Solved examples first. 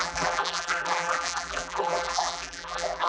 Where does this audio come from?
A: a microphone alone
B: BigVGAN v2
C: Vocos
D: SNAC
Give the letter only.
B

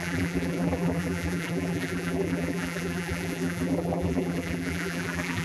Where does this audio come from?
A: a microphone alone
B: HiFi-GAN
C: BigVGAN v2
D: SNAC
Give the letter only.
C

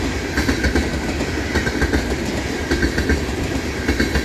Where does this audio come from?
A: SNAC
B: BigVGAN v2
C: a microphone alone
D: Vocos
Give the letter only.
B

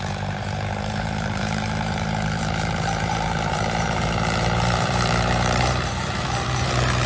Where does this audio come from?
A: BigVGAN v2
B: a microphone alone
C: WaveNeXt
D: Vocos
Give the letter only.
A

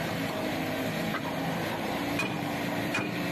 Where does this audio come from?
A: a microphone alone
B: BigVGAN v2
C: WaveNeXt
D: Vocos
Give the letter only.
B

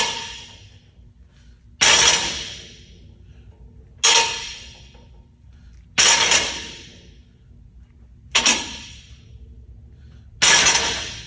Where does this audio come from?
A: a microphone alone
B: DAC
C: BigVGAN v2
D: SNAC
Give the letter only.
A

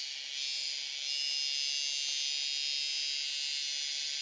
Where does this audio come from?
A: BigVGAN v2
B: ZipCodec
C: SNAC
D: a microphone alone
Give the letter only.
D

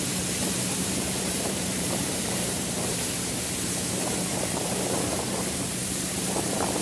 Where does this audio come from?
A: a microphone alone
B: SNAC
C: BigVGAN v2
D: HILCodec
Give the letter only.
C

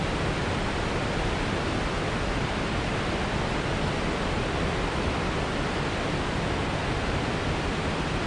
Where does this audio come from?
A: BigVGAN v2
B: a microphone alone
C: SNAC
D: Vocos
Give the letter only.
B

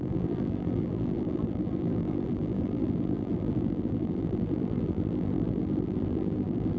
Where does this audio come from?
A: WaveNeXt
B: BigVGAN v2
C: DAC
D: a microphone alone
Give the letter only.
B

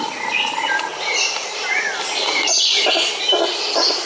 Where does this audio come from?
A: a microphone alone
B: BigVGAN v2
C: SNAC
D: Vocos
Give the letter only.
A